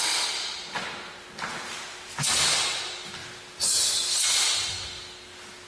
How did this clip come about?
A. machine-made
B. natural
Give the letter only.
B